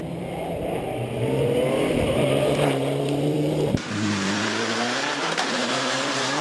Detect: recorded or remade remade